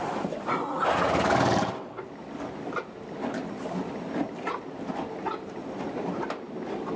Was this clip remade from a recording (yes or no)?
no